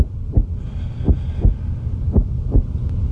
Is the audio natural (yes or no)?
yes